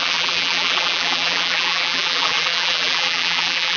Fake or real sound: fake